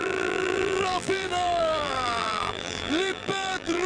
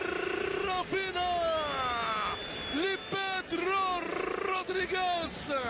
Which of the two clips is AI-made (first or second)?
first